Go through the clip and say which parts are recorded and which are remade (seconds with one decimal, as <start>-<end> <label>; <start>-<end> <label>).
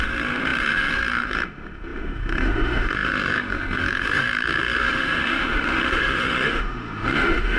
0.0-7.6 remade